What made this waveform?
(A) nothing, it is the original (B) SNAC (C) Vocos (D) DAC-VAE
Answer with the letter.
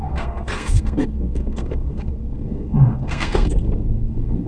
B